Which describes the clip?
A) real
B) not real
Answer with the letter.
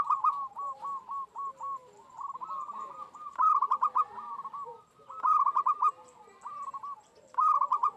A